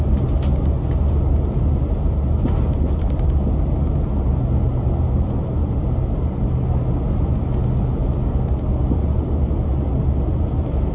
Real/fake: real